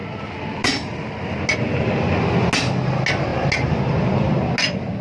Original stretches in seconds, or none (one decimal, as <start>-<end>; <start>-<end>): 0.0-5.0